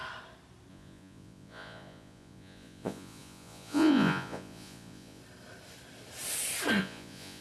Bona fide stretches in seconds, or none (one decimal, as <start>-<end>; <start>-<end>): 0.0-0.7; 5.2-6.8